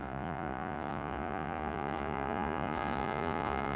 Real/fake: fake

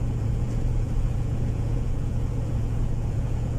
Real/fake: fake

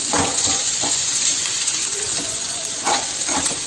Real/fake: fake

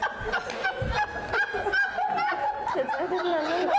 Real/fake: real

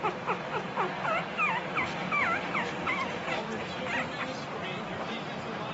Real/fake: real